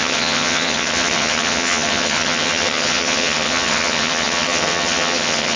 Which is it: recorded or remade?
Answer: remade